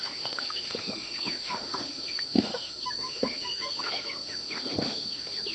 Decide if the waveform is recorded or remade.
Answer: remade